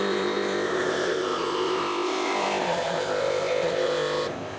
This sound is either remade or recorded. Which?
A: remade